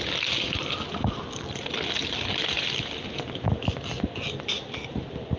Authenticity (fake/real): real